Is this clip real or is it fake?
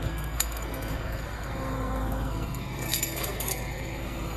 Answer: fake